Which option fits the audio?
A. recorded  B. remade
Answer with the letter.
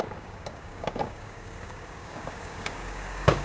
B